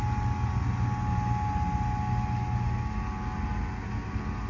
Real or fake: real